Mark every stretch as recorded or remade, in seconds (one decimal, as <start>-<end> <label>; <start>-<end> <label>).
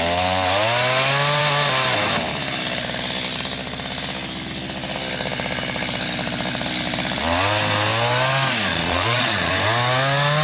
0.0-8.7 recorded; 8.7-9.5 remade; 9.5-10.4 recorded